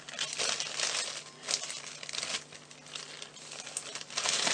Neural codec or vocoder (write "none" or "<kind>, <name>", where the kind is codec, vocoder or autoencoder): none